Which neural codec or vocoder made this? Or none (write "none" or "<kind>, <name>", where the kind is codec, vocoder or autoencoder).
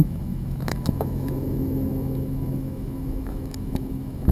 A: autoencoder, DAC-VAE